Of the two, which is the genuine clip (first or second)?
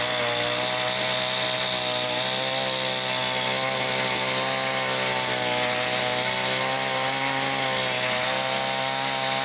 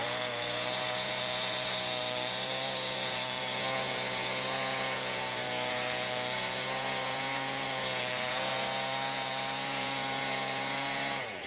first